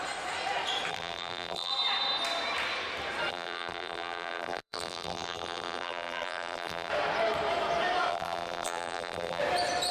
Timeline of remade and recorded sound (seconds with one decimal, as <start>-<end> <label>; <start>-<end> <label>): 0.0-0.9 recorded; 0.9-1.7 remade; 1.7-3.3 recorded; 3.3-6.9 remade; 6.9-8.1 recorded; 8.1-9.4 remade; 9.4-9.9 recorded